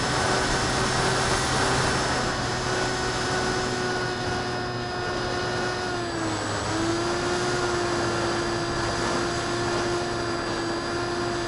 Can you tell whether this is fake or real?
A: real